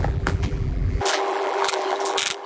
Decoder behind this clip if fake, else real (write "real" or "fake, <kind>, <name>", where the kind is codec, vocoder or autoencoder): fake, vocoder, BigVGAN v2